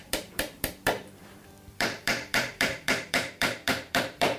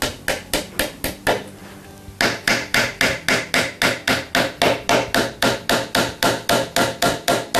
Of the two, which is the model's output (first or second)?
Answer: first